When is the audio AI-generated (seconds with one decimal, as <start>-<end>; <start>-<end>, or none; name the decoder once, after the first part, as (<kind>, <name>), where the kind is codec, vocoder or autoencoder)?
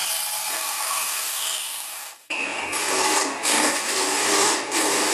0.5-5.1 (codec, DAC)